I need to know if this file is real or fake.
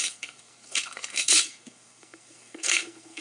fake